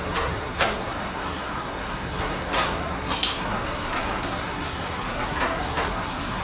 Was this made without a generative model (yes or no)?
no